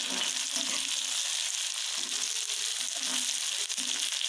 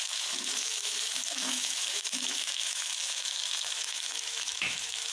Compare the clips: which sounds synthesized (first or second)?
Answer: second